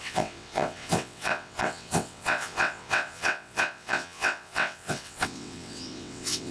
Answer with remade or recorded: remade